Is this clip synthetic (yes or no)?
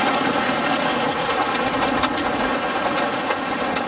yes